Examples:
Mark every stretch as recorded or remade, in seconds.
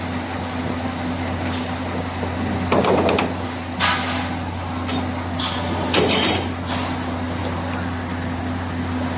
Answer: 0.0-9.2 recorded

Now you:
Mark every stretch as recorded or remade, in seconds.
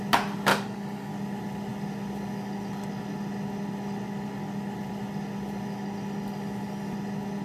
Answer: 0.0-0.5 recorded; 0.5-1.1 remade; 1.1-7.4 recorded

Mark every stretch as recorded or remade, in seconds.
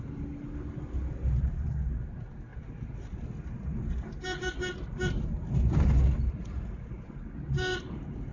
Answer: 0.0-8.3 recorded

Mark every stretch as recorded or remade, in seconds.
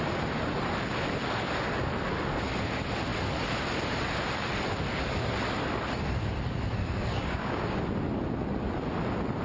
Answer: 0.0-7.1 recorded; 7.1-7.8 remade; 7.8-9.4 recorded